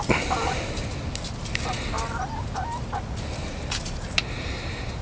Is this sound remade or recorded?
recorded